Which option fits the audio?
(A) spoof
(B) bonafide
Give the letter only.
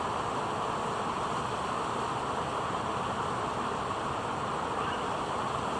B